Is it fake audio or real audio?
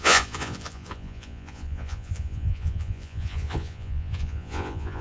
fake